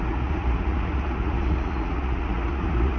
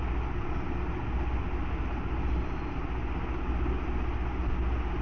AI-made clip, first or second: first